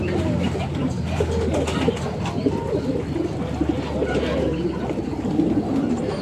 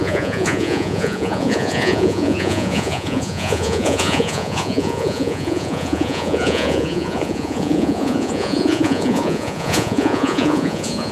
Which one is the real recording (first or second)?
first